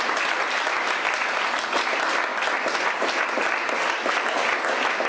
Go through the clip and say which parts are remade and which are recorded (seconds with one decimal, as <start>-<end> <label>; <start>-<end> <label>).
0.0-5.1 recorded